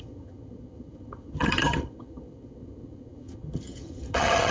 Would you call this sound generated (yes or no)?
yes